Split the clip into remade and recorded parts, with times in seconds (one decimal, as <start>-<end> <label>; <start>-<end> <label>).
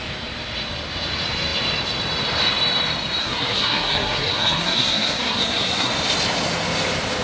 0.0-3.2 recorded; 3.2-5.9 remade; 5.9-7.2 recorded